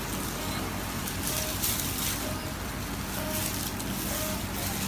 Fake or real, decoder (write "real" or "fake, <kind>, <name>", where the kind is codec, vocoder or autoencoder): real